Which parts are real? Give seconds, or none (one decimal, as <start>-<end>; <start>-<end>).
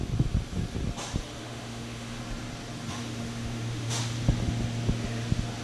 0.0-1.4; 2.2-3.0; 4.0-5.6